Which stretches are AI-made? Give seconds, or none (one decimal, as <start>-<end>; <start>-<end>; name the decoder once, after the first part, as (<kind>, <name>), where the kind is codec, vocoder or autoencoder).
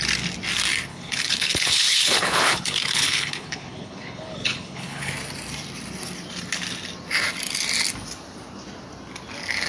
0.9-5.1 (codec, HILCodec)